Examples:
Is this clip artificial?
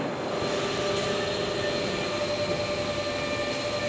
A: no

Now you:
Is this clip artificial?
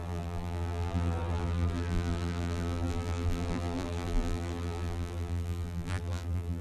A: yes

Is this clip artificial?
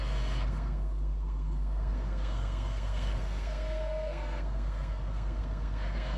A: yes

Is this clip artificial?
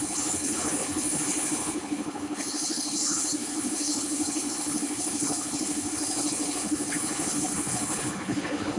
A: yes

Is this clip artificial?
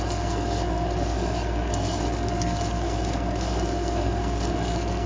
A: yes